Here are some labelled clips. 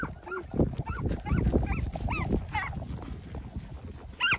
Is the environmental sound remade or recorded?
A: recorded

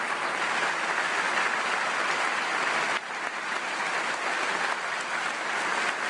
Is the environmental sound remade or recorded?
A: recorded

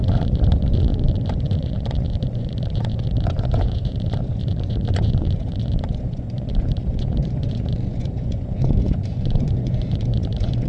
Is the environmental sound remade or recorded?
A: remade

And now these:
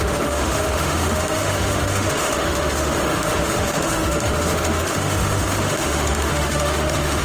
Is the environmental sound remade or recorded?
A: remade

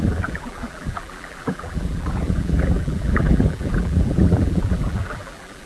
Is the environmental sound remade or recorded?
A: remade